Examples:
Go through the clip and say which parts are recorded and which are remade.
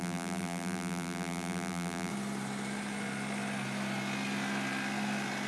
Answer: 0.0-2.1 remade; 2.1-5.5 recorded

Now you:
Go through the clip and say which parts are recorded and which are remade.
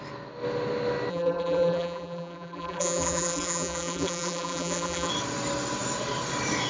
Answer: 0.0-1.1 recorded; 1.1-5.1 remade; 5.1-6.7 recorded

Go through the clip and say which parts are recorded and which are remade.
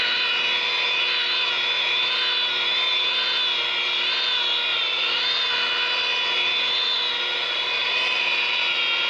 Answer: 0.0-4.7 recorded; 4.7-5.2 remade; 5.2-7.8 recorded; 7.8-8.6 remade; 8.6-9.1 recorded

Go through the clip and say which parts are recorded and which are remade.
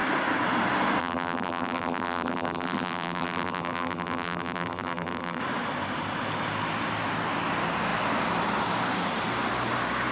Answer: 0.0-1.0 recorded; 1.0-5.4 remade; 5.4-10.1 recorded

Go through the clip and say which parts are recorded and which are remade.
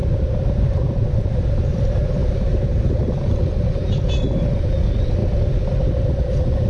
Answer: 0.0-1.4 remade; 1.4-2.2 recorded; 2.2-4.0 remade; 4.0-6.7 recorded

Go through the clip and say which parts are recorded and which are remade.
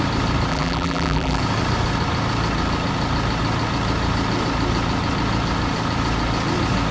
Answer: 0.0-0.5 recorded; 0.5-1.4 remade; 1.4-6.9 recorded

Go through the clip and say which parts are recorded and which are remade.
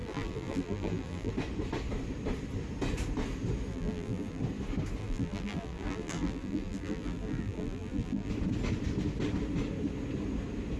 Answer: 0.0-1.3 remade; 1.3-3.7 recorded; 3.7-4.4 remade; 4.4-5.0 recorded; 5.0-8.3 remade; 8.3-10.8 recorded